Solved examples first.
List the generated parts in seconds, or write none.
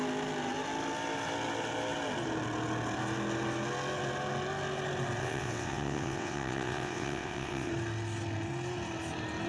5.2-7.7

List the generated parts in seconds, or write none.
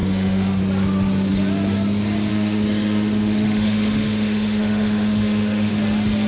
0.0-0.6; 2.3-5.7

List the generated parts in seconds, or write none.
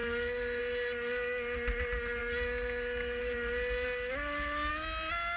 none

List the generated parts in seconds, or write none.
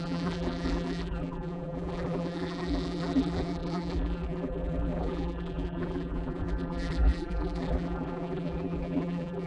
0.0-9.5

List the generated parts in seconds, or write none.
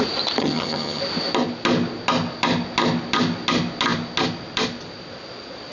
0.4-1.0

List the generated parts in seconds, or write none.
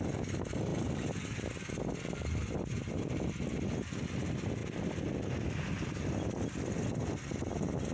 none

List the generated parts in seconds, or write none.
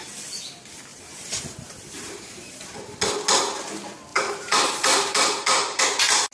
0.9-3.0; 4.1-5.8